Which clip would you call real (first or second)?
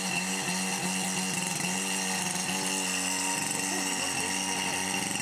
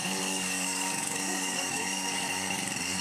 first